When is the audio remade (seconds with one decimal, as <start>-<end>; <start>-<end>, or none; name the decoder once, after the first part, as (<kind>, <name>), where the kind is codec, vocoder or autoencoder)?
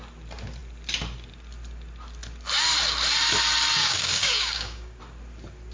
3.8-5.0 (codec, DAC)